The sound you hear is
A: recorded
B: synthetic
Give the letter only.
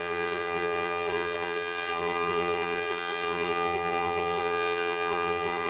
B